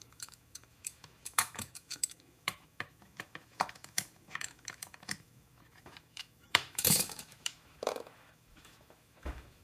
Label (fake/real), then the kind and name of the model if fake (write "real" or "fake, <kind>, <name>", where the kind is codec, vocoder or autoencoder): fake, autoencoder, DAC-VAE